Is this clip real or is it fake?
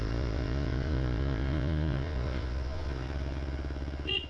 fake